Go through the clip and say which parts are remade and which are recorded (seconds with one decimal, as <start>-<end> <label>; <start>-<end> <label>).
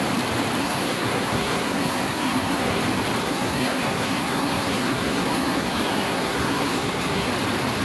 0.0-0.6 recorded; 0.6-2.8 remade; 2.8-3.2 recorded; 3.2-7.3 remade; 7.3-7.8 recorded